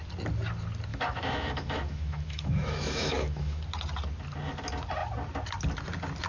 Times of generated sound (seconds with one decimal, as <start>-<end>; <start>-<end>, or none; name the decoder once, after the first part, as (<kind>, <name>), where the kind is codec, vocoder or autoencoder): 0.9-3.6 (autoencoder, DAC-VAE)